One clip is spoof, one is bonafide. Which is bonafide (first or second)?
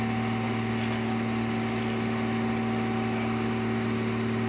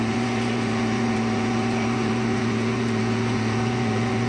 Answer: first